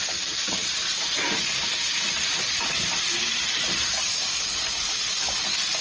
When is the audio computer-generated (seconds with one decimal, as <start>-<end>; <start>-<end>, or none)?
0.6-4.1